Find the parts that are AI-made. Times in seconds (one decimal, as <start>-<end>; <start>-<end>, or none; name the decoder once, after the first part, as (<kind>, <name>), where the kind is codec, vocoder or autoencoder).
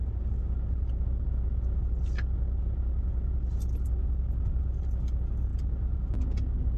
none